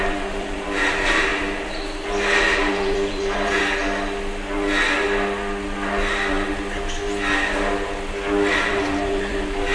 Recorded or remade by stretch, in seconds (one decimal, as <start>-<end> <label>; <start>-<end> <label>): 0.0-1.3 remade; 1.3-2.4 recorded; 2.4-3.6 remade; 3.6-8.5 recorded; 8.5-9.7 remade